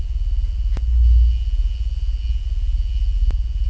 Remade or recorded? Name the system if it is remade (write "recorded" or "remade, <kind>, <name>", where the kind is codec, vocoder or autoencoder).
recorded